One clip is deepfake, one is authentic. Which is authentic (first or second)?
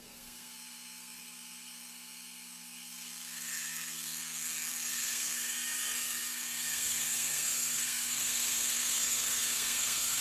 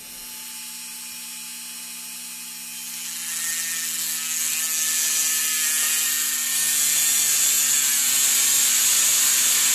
second